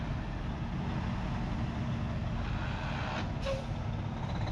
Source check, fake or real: real